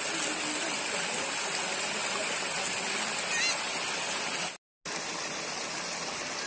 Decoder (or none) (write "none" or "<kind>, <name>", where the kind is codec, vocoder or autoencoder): none